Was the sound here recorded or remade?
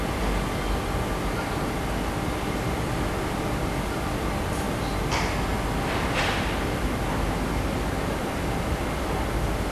recorded